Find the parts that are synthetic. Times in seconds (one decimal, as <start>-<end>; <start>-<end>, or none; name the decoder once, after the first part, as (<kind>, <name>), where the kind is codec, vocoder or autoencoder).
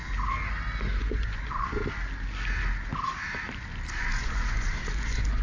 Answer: 1.0-1.8 (vocoder, Vocos); 4.0-5.4